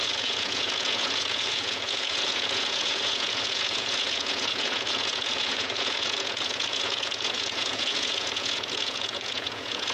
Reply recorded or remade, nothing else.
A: remade